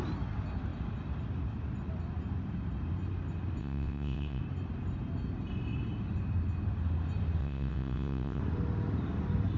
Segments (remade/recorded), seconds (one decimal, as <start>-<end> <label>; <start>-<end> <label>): 0.0-3.6 recorded; 3.6-4.4 remade; 4.4-7.4 recorded; 7.4-8.4 remade; 8.4-9.6 recorded